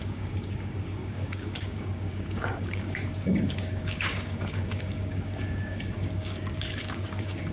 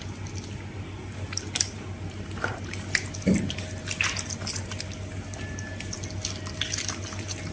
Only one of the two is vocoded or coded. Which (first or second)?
first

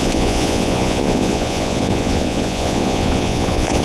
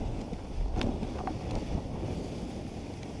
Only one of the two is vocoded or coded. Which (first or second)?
first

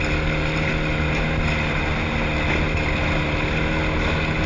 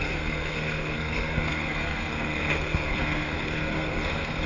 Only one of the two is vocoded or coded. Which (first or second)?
second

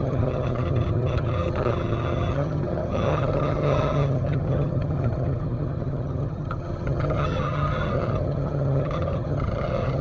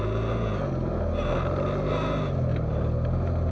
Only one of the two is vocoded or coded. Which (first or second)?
first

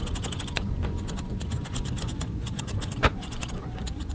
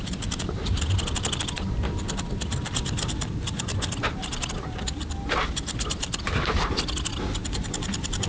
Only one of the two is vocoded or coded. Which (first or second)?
first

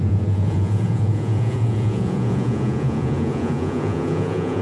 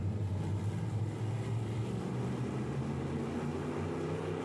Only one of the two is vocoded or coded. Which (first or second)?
first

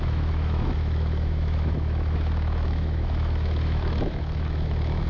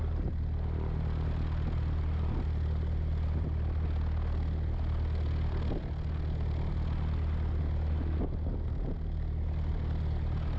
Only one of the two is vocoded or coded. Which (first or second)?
first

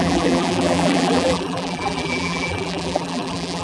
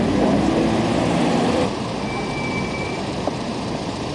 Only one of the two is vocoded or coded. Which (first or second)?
first